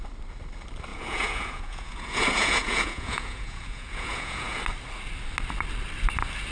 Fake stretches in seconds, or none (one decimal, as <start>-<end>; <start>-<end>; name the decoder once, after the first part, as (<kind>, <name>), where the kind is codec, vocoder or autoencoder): 0.9-4.6 (vocoder, Vocos)